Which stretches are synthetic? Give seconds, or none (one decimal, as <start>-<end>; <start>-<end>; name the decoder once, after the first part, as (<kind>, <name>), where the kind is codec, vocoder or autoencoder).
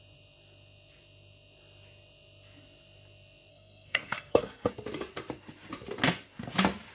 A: 3.5-4.7 (codec, SNAC)